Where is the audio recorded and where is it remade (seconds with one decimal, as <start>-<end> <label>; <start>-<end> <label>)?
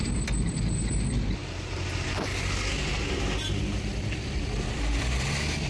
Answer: 0.0-5.7 remade